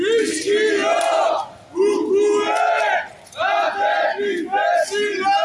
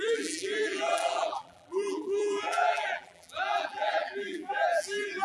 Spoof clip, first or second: second